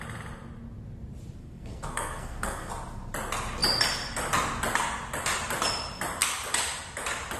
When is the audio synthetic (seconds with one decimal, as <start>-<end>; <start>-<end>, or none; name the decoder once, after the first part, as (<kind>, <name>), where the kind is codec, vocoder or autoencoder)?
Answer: 1.4-2.7 (codec, SNAC)